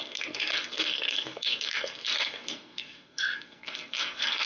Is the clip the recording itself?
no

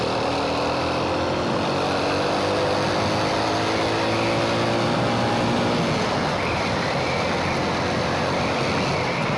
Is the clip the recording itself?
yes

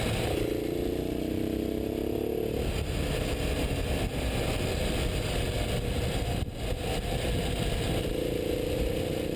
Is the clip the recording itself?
yes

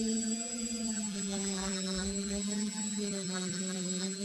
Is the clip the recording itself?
no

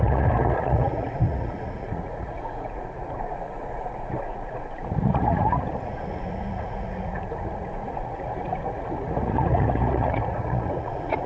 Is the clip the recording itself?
no